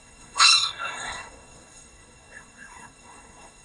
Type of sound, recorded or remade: remade